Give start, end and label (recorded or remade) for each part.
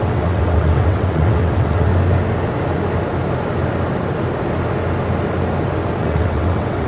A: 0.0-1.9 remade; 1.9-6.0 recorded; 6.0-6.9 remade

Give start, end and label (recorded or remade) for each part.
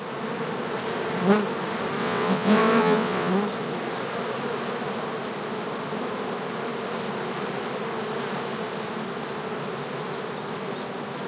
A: 0.0-2.0 recorded; 2.0-3.3 remade; 3.3-11.3 recorded